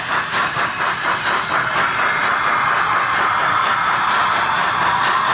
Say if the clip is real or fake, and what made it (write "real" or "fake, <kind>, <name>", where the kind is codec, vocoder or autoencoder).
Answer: real